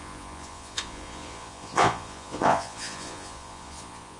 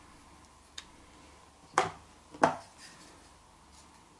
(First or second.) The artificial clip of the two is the first